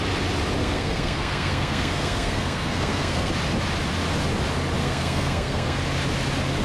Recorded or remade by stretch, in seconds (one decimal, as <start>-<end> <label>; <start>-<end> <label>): 0.0-0.6 recorded; 0.6-3.3 remade; 3.3-4.8 recorded; 4.8-5.8 remade; 5.8-6.6 recorded